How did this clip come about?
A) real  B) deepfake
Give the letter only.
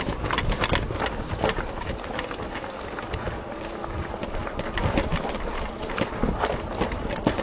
A